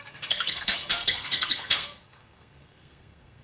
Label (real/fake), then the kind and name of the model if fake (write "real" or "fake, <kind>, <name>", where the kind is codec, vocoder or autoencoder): fake, codec, SNAC